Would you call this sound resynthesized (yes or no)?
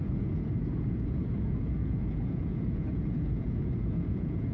yes